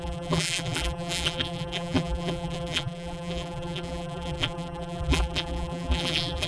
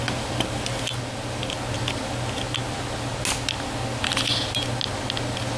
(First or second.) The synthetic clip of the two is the first